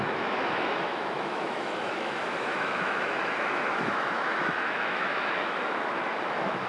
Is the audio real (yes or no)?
no